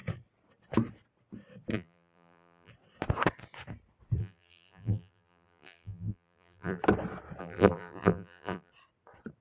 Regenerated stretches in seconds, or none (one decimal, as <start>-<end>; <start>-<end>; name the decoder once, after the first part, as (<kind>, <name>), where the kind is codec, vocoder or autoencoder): 1.7-2.7 (vocoder, BigVGAN v2); 4.2-6.8; 7.4-8.7